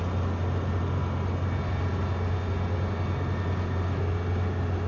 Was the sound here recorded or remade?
recorded